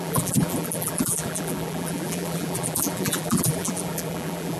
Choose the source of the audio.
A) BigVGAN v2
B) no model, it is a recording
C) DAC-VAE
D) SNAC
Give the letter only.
A